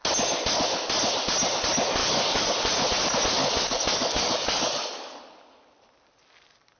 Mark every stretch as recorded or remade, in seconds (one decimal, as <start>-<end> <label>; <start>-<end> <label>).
0.0-2.0 recorded; 2.0-2.5 remade; 2.5-3.4 recorded; 3.4-5.2 remade; 5.2-6.8 recorded